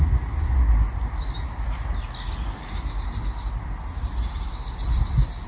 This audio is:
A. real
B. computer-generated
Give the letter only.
A